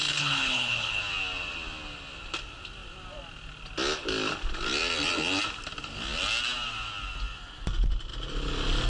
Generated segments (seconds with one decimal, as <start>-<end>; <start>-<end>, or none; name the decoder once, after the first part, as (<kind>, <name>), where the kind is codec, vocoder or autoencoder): 0.0-1.0 (codec, HILCodec)